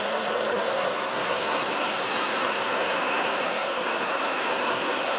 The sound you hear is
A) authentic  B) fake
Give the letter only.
B